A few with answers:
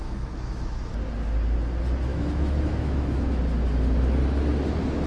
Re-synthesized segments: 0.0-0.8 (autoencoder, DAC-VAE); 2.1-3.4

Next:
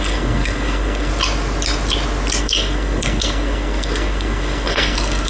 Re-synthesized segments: 0.0-1.1 (codec, SNAC); 2.4-5.3

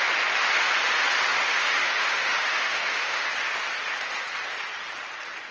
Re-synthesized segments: 1.4-3.3 (autoencoder, DAC-VAE)